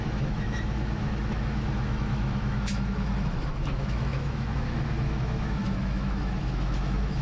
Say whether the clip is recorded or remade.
remade